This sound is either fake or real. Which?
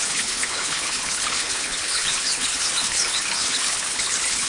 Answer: fake